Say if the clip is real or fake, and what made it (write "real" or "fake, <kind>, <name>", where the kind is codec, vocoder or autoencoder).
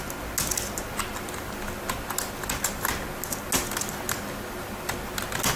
real